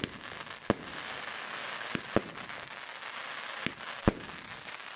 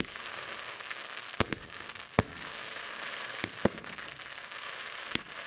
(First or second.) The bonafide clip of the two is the first